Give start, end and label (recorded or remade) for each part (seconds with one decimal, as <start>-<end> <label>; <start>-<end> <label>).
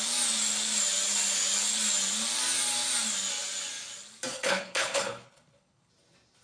0.0-4.3 recorded; 4.3-5.9 remade; 5.9-6.4 recorded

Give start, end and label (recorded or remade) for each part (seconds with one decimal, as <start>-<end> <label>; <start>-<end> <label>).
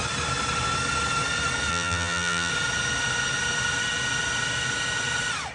0.0-1.7 recorded; 1.7-2.5 remade; 2.5-5.5 recorded